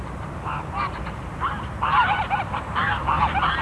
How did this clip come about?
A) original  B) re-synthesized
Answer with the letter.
B